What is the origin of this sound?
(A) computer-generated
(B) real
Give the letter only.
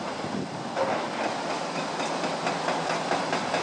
A